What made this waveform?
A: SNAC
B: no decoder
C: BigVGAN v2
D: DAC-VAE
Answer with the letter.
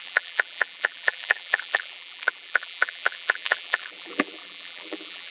C